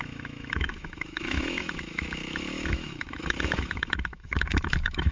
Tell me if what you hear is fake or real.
fake